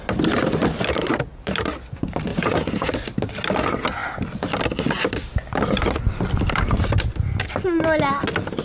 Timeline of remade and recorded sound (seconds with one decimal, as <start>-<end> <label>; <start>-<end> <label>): 0.0-2.3 recorded; 2.3-2.9 remade; 2.9-8.6 recorded